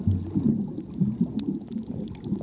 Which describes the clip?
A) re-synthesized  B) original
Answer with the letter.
B